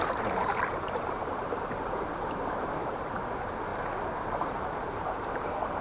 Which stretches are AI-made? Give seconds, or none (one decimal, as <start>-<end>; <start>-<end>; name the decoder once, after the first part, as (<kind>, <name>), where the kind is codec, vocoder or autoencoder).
0.0-3.7 (vocoder, BigVGAN v2); 4.6-5.8